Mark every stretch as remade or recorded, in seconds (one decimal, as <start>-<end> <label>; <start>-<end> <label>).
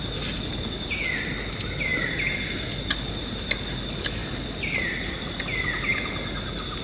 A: 0.0-6.8 recorded